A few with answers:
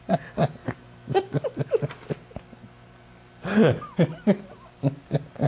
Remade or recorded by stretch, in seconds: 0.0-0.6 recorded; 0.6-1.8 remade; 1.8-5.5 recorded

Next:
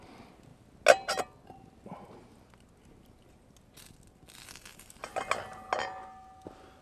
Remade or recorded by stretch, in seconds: 0.0-6.8 recorded

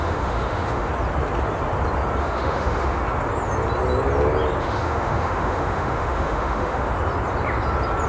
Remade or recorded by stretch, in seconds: 0.0-0.9 remade; 0.9-2.2 recorded; 2.2-3.0 remade; 3.0-4.6 recorded; 4.6-6.9 remade; 6.9-8.1 recorded

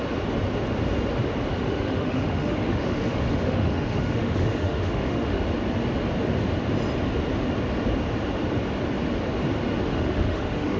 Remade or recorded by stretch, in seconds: 0.0-1.5 recorded; 1.5-5.4 remade; 5.4-9.9 recorded; 9.9-10.8 remade

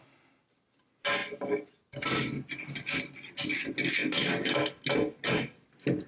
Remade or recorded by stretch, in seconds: 0.0-6.1 recorded